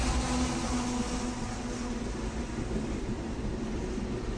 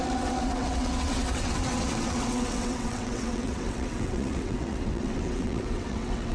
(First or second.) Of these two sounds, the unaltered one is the first